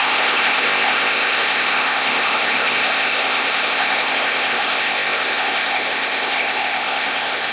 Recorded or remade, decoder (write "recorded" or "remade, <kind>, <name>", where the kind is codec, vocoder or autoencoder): remade, codec, ZipCodec